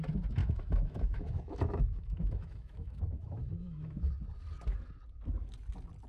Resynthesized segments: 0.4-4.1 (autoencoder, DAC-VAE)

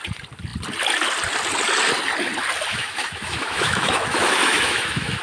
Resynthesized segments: 2.7-5.2 (autoencoder, DAC-VAE)

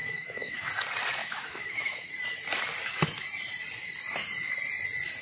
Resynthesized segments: 0.0-0.7 (autoencoder, DAC-VAE); 1.2-2.1

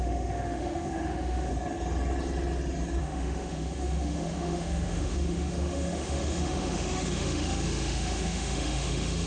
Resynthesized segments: 0.0-1.5 (autoencoder, DAC-VAE); 3.0-9.3

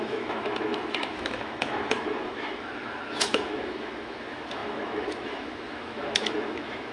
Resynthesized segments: 0.0-6.9 (autoencoder, DAC-VAE)

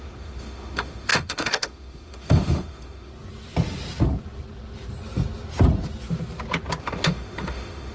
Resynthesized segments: 0.0-3.1 (autoencoder, DAC-VAE); 6.8-7.9

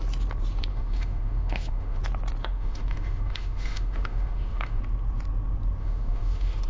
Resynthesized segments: 0.7-2.0 (autoencoder, DAC-VAE); 2.4-4.8; 5.8-6.7

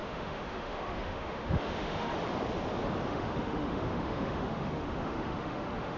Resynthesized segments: 0.0-2.1 (autoencoder, DAC-VAE); 3.1-6.0